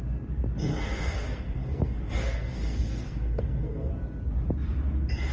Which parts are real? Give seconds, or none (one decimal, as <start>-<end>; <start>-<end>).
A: 0.0-0.7; 3.9-5.3